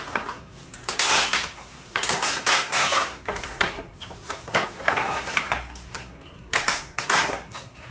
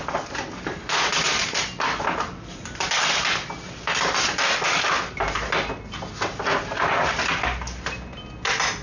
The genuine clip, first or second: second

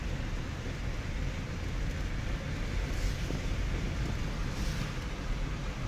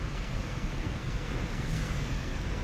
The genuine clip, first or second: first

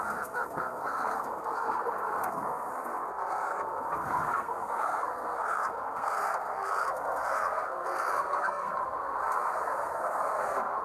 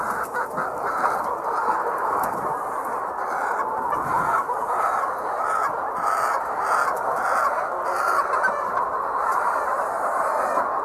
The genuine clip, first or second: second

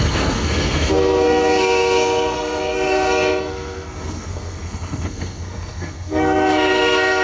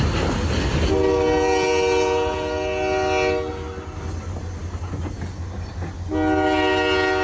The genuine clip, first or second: second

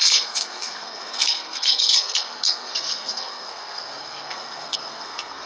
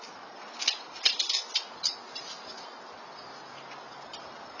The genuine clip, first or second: second